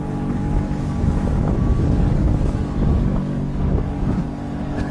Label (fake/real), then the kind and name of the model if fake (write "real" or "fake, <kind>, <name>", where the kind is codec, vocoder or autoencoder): fake, codec, DAC